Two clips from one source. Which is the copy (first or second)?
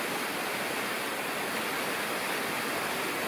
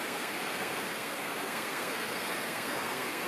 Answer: second